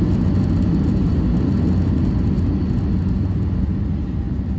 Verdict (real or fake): real